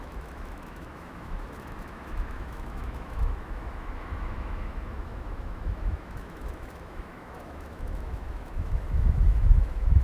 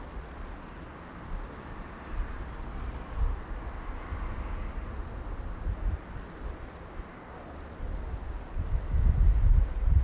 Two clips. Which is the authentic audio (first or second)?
second